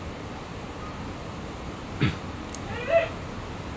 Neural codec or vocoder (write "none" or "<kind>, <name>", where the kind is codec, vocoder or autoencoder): none